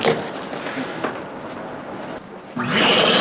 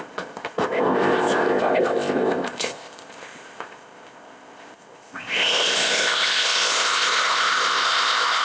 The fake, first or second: second